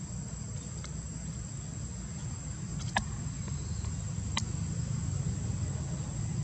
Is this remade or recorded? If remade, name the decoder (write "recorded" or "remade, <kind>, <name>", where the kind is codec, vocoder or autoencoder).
recorded